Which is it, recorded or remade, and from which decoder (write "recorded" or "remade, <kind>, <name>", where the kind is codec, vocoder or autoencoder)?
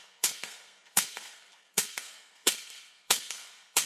remade, codec, SNAC